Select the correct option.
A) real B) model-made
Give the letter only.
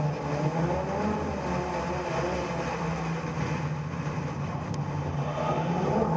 A